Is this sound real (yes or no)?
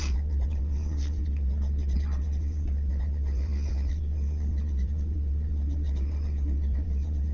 no